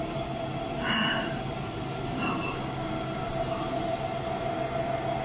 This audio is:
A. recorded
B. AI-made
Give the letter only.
A